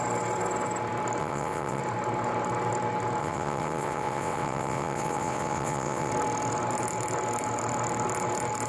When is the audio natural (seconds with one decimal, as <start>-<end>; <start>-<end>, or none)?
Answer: 0.0-1.2; 1.8-3.2; 6.1-8.7